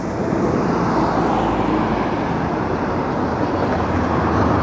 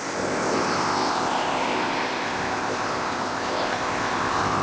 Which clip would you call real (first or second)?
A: first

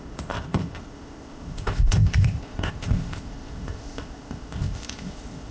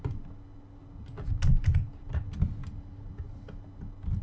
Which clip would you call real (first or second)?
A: second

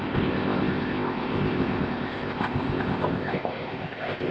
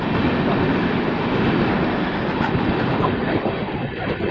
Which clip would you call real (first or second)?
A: second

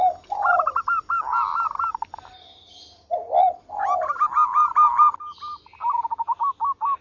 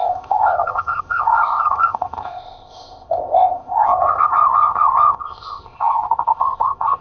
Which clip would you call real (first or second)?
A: first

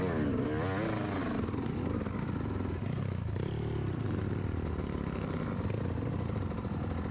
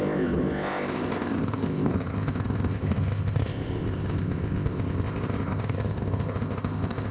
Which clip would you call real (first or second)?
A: first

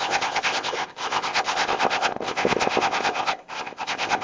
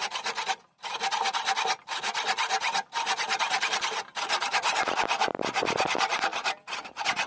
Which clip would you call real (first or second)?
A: second